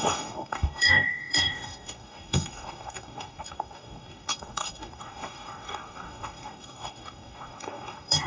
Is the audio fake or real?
fake